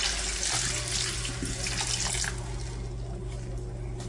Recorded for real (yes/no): yes